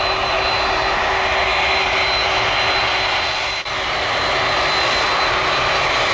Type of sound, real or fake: real